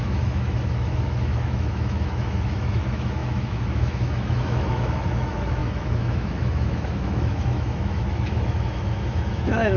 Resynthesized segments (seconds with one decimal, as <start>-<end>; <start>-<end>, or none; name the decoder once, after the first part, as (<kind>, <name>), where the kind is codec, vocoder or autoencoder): 0.0-9.8 (autoencoder, DAC-VAE)